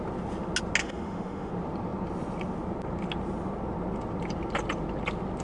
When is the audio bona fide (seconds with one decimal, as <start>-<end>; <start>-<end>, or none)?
0.0-0.8; 1.5-5.4